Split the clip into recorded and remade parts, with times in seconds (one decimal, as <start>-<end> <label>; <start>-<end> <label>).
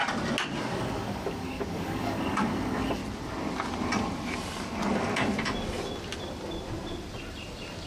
0.0-0.6 recorded; 0.6-3.0 remade; 3.0-7.9 recorded